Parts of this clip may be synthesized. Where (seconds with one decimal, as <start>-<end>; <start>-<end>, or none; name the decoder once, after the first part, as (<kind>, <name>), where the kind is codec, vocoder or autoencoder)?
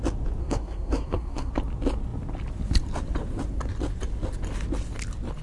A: 0.4-1.5 (codec, SNAC)